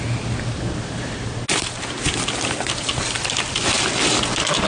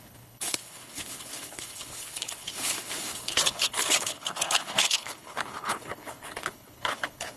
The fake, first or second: second